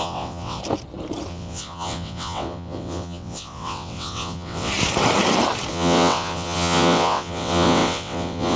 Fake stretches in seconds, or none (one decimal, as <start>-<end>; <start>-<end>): 0.0-0.6; 1.3-4.7; 5.7-8.6